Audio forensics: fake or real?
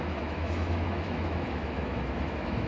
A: fake